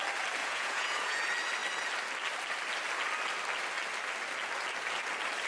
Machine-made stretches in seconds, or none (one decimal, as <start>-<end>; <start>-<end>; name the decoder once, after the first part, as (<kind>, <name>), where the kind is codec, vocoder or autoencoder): 0.4-1.2 (vocoder, Vocos)